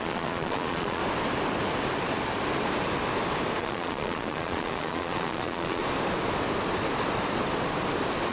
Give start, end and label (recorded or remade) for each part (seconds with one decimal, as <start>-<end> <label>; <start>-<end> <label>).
0.0-1.0 remade; 1.0-3.6 recorded; 3.6-5.8 remade; 5.8-8.3 recorded